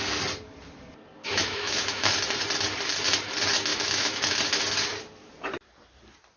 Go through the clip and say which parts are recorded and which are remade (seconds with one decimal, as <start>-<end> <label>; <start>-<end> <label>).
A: 0.0-1.2 recorded; 1.2-2.1 remade; 2.1-3.7 recorded; 3.7-4.4 remade; 4.4-6.4 recorded